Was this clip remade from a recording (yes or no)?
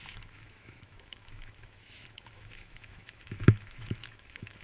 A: yes